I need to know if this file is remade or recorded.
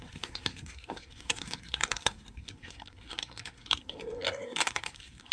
remade